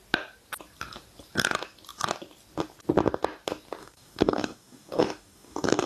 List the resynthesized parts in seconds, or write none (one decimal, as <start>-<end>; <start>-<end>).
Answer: 3.8-5.9